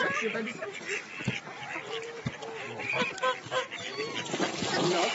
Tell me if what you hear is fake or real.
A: real